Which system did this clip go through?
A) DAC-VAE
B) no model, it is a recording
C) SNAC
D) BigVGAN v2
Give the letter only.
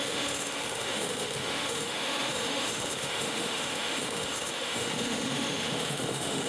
A